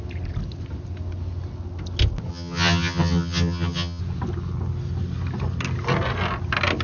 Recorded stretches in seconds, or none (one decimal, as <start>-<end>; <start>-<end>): 0.0-2.3; 4.0-6.8